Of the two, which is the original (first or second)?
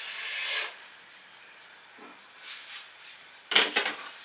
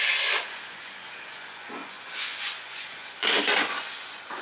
first